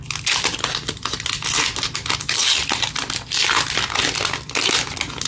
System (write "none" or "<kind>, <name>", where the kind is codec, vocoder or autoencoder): none